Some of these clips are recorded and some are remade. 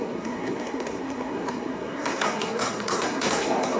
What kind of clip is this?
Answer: remade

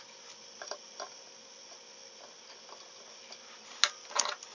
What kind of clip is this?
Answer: recorded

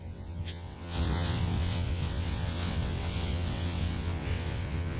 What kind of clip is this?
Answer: remade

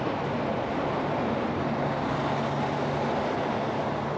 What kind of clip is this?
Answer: recorded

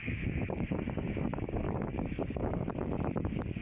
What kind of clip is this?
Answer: remade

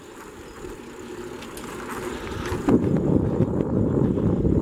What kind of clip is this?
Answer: remade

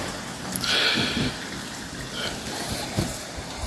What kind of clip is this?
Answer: recorded